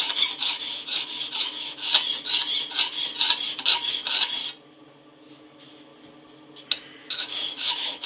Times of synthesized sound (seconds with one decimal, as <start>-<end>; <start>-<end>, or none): 0.0-1.9; 3.4-4.4; 5.3-5.9; 7.0-8.1